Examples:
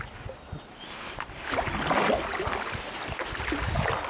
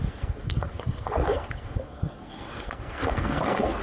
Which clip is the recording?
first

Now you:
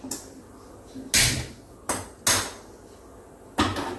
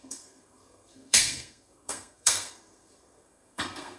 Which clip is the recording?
first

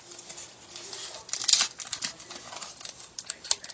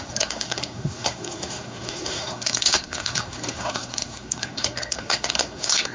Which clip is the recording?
first